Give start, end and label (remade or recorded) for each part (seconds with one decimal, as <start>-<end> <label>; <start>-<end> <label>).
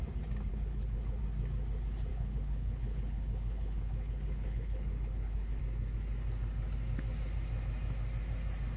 0.0-0.5 recorded; 0.5-1.2 remade; 1.2-2.1 recorded; 2.1-5.6 remade; 5.6-8.8 recorded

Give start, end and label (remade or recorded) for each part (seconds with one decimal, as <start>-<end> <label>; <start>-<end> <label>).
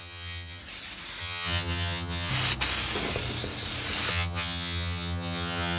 0.0-0.6 remade; 0.6-1.2 recorded; 1.2-2.3 remade; 2.3-4.1 recorded; 4.1-5.8 remade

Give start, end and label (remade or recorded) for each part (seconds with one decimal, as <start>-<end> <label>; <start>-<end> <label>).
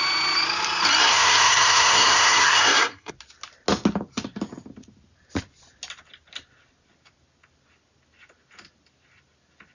0.0-1.0 recorded; 1.0-3.1 remade; 3.1-9.7 recorded